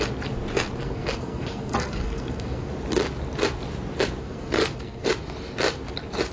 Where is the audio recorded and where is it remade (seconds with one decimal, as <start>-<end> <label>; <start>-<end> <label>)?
0.0-0.8 recorded; 0.8-2.7 remade; 2.7-4.2 recorded; 4.2-5.1 remade; 5.1-6.3 recorded